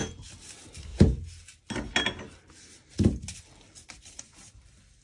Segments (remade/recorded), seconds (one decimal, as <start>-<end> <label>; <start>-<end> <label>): 0.0-0.5 recorded; 0.5-0.9 remade; 0.9-3.9 recorded; 3.9-5.0 remade